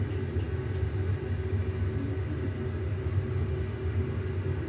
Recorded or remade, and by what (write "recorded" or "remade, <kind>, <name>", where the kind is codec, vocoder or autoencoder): recorded